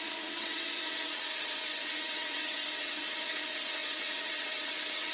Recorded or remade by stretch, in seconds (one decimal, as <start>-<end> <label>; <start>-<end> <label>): 0.0-5.1 remade